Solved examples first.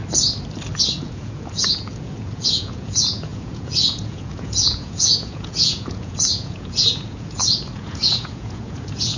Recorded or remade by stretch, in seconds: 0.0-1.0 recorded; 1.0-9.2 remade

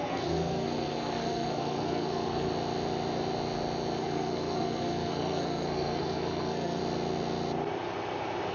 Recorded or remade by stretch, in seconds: 0.0-2.5 remade; 2.5-4.0 recorded; 4.0-6.8 remade; 6.8-8.5 recorded

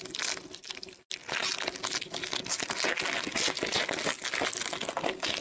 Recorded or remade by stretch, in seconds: 0.0-5.4 recorded

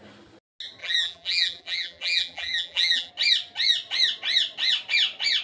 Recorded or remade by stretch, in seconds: 0.0-0.8 recorded; 0.8-3.1 remade; 3.1-5.4 recorded

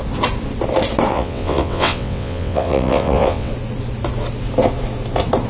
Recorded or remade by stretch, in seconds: 0.0-1.1 recorded; 1.1-3.5 remade; 3.5-5.5 recorded

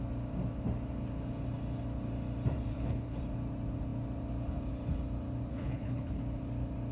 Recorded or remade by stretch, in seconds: 0.0-2.7 recorded; 2.7-3.2 remade; 3.2-5.5 recorded; 5.5-6.2 remade; 6.2-6.9 recorded

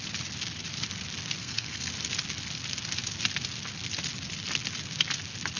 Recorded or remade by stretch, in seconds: 0.0-1.4 recorded; 1.4-1.9 remade; 1.9-5.6 recorded

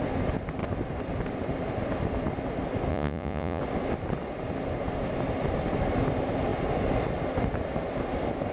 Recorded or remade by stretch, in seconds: 0.0-2.9 recorded; 2.9-3.6 remade; 3.6-8.5 recorded